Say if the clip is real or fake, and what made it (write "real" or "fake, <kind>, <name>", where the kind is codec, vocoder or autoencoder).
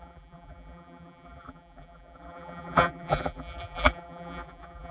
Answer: fake, vocoder, BigVGAN v2